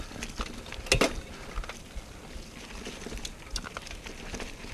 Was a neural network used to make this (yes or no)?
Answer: no